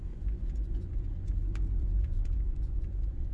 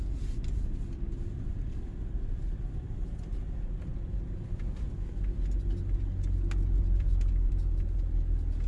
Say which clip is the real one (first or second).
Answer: second